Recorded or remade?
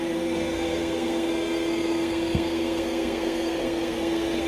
remade